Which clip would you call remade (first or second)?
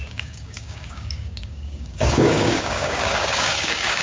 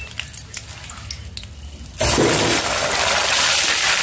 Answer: first